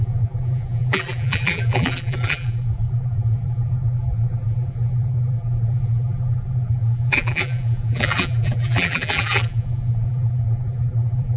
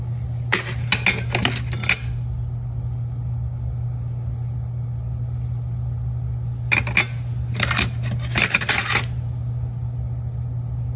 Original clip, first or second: second